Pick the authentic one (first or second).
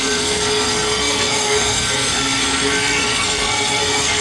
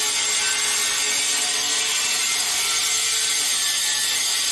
second